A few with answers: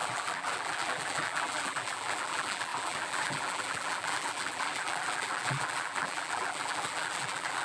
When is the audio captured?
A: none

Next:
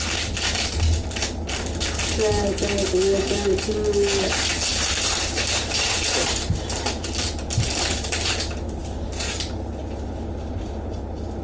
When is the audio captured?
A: 0.0-4.7; 8.4-11.4

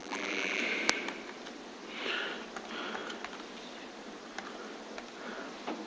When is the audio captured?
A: 0.6-5.9